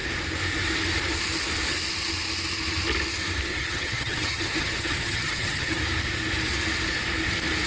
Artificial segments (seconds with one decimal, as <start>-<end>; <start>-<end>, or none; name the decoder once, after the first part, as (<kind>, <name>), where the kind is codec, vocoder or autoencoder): 3.5-5.8 (vocoder, HiFi-GAN)